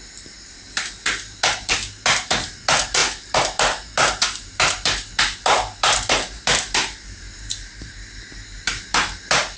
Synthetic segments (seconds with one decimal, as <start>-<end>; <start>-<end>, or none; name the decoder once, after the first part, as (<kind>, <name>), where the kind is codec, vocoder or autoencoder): 0.0-9.6 (vocoder, BigVGAN v2)